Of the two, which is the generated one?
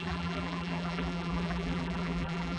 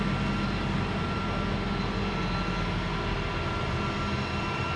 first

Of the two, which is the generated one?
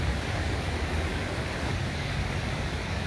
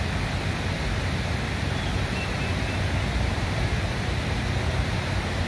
first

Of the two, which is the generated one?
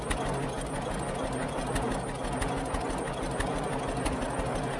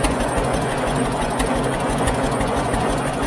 second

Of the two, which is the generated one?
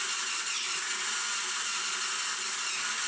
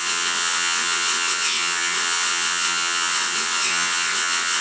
second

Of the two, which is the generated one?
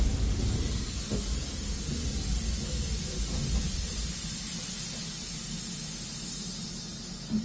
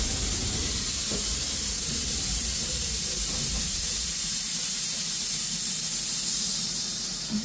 second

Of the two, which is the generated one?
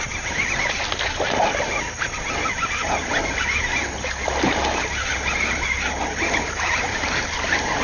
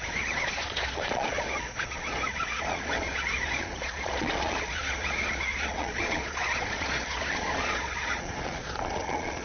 second